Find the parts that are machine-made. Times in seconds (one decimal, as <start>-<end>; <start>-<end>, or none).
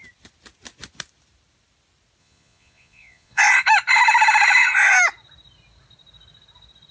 2.2-3.4